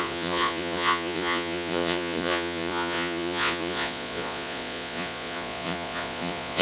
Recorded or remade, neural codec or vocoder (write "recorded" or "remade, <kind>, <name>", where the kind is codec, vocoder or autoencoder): remade, vocoder, Vocos